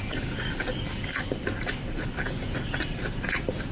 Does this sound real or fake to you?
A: real